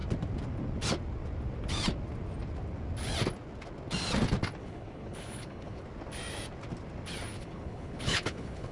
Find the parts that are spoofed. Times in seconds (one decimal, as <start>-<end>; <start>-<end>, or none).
4.6-5.8; 7.3-8.7